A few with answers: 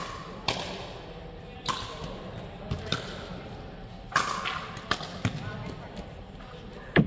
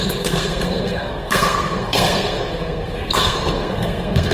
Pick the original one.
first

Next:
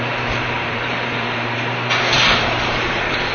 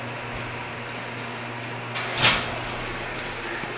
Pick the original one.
second